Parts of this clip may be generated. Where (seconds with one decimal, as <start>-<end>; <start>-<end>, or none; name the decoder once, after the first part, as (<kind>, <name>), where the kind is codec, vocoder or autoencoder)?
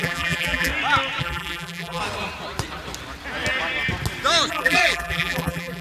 0.0-0.7 (vocoder, BigVGAN v2); 1.2-2.0; 4.5-5.8